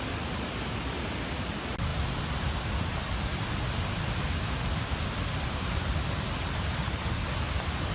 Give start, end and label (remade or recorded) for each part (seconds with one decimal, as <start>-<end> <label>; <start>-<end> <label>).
0.0-1.9 recorded; 1.9-6.2 remade; 6.2-7.9 recorded